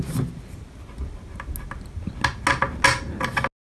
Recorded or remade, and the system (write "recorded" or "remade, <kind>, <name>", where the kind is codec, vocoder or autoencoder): recorded